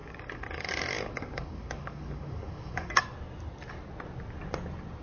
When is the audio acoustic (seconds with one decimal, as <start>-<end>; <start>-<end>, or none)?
3.0-5.0